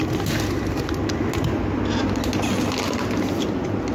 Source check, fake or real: real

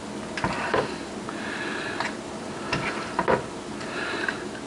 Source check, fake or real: real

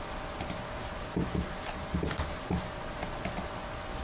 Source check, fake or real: real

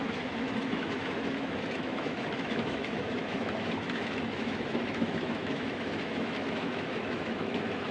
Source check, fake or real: fake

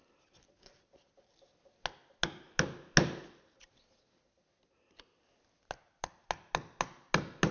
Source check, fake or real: real